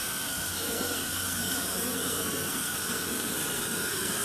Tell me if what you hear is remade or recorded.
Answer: remade